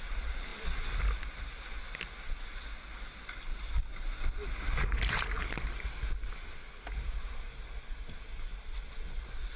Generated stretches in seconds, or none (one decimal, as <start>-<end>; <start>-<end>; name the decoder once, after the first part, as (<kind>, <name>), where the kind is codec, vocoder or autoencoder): none